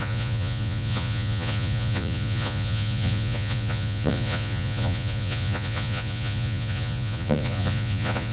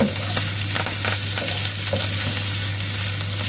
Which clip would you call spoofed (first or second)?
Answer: first